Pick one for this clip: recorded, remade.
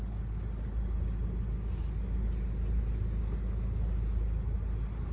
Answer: recorded